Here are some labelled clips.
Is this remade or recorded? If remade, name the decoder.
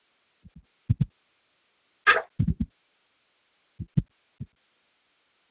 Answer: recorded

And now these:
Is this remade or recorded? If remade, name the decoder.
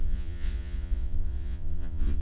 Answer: remade, vocoder, Vocos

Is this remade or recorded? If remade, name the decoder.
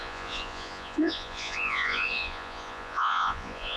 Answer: remade, vocoder, Vocos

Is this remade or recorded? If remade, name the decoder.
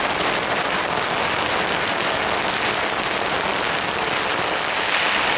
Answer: recorded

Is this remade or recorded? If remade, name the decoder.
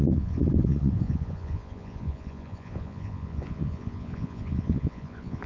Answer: remade, vocoder, Vocos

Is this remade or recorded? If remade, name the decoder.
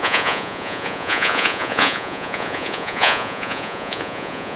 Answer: remade, vocoder, Vocos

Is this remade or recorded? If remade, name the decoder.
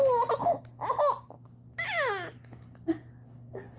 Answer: recorded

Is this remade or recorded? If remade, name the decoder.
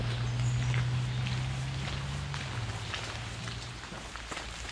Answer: recorded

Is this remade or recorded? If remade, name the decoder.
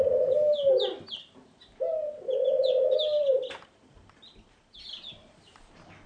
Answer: recorded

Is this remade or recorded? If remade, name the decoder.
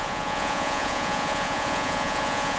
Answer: remade, vocoder, Vocos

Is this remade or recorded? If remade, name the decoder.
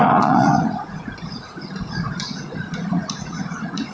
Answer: remade, vocoder, Vocos